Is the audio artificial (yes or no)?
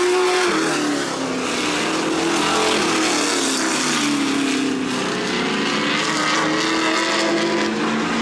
no